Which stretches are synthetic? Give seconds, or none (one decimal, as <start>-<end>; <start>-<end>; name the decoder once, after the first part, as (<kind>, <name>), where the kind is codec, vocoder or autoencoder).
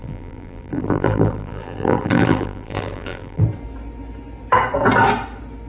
0.0-3.4 (vocoder, BigVGAN v2)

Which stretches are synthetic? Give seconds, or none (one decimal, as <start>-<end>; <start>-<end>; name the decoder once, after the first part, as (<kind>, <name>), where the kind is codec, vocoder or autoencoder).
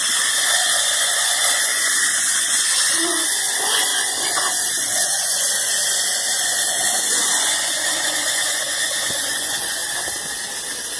0.0-9.8 (vocoder, Vocos)